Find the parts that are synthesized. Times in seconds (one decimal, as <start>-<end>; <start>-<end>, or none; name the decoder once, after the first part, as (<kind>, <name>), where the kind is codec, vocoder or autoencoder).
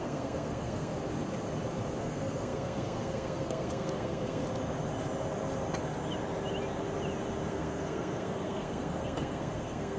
0.0-0.9 (codec, SNAC); 2.0-4.4; 7.5-10.0